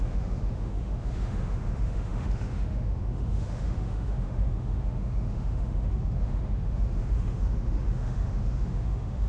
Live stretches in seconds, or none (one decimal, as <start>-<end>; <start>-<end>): none